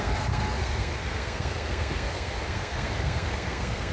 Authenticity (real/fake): fake